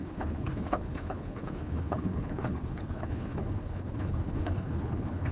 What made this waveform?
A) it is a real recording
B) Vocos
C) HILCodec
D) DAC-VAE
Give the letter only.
C